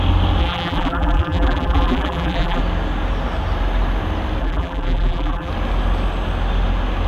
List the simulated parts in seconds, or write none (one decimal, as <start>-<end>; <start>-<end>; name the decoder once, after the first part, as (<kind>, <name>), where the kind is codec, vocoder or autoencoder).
0.4-2.6 (vocoder, BigVGAN v2); 4.4-5.5